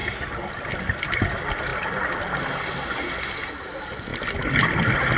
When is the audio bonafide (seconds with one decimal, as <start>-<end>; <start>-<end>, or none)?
0.0-5.2